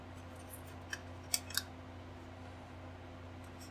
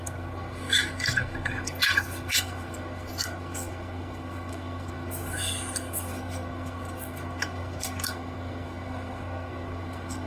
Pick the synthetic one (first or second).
second